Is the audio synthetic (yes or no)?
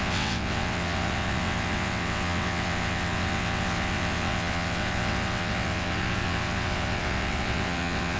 yes